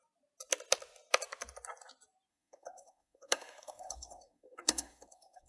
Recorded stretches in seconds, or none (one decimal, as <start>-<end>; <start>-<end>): 0.0-2.3